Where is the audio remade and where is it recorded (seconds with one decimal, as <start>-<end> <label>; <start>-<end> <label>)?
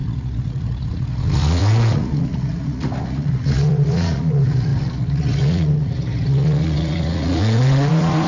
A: 0.0-8.3 remade